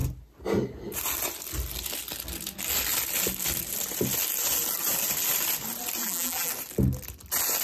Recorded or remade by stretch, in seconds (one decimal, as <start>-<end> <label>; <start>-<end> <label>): 0.0-6.0 recorded; 6.0-6.5 remade; 6.5-7.6 recorded